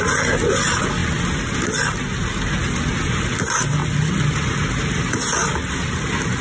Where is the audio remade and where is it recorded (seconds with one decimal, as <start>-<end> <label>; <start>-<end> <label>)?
0.0-6.4 recorded